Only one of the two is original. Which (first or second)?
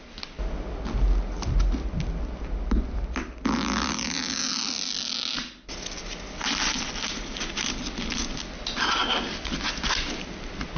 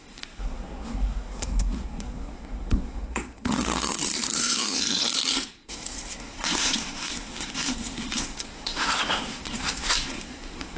first